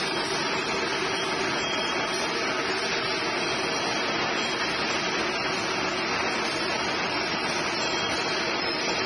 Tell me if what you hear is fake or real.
real